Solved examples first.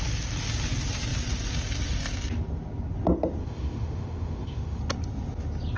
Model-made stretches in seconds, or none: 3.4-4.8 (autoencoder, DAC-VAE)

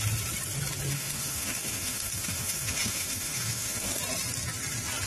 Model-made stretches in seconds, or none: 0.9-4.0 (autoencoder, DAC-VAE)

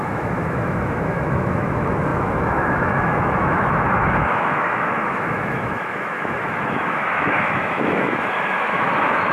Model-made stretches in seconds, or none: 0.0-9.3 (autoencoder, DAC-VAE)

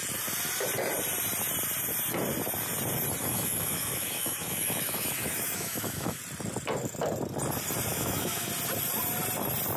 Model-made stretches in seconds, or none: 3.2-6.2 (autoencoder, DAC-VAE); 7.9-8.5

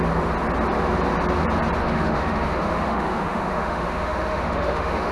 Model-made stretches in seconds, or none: 1.8-5.1 (autoencoder, DAC-VAE)

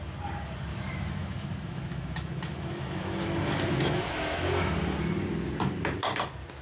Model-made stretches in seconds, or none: 0.7-4.7 (autoencoder, DAC-VAE)

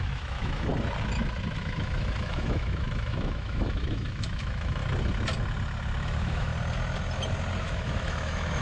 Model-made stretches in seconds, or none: 0.0-0.7 (autoencoder, DAC-VAE); 1.6-4.8; 6.0-6.5; 7.6-8.6